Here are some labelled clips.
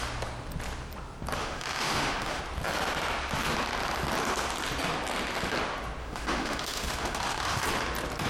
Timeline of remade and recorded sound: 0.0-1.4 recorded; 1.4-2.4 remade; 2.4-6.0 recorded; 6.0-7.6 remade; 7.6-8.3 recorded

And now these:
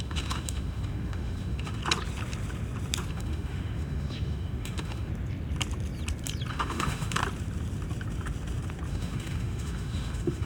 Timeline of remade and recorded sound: 0.0-1.8 remade; 1.8-3.1 recorded; 3.1-5.1 remade; 5.1-6.5 recorded; 6.5-7.2 remade; 7.2-8.9 recorded; 8.9-10.5 remade

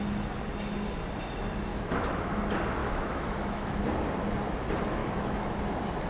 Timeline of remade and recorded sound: 0.0-1.7 recorded; 1.7-2.4 remade; 2.4-2.8 recorded; 2.8-3.8 remade; 3.8-5.0 recorded; 5.0-5.5 remade; 5.5-6.1 recorded

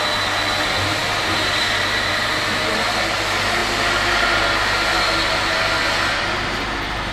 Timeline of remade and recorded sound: 0.0-7.1 recorded

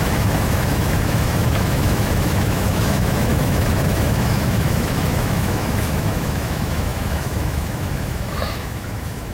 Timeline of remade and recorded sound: 0.0-9.3 remade

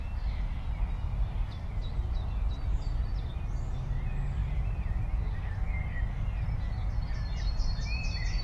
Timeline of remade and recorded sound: 0.0-8.4 recorded

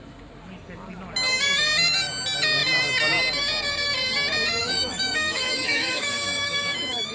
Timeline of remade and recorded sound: 0.0-4.6 recorded; 4.6-7.1 remade